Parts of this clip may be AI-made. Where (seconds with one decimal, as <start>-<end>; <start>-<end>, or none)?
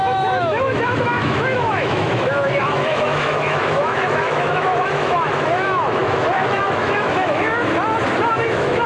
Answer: 0.0-7.5; 8.3-8.9